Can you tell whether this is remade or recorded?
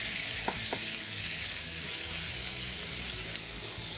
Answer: remade